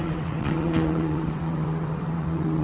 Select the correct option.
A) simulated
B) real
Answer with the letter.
A